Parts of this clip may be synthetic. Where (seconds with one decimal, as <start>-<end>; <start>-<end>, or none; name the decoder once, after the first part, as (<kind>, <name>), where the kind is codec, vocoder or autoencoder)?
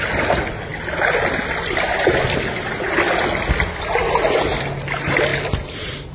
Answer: none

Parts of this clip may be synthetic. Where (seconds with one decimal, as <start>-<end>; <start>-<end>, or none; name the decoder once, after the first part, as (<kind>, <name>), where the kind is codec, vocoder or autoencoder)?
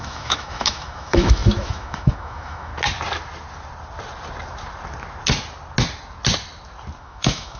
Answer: 0.0-2.7 (autoencoder, DAC-VAE); 7.0-7.6